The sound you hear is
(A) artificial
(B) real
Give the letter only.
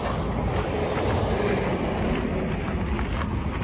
B